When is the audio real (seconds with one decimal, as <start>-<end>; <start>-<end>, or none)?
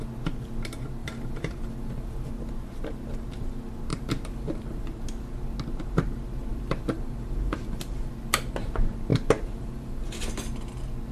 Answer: 0.0-1.0; 2.3-3.9; 4.8-6.5; 8.1-9.1; 10.1-11.1